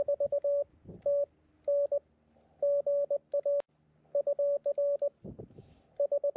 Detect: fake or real real